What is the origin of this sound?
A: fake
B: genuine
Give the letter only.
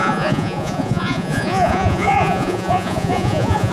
A